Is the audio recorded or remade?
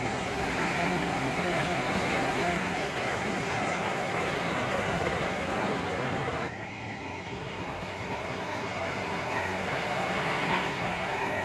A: remade